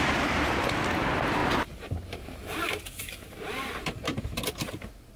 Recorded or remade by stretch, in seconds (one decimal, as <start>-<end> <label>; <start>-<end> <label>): 0.0-5.2 remade